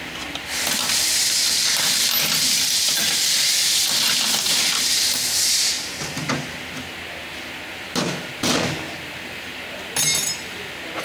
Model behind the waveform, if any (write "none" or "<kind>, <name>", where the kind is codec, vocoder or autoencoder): none